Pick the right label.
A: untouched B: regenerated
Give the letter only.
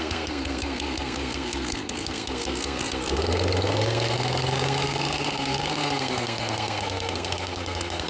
B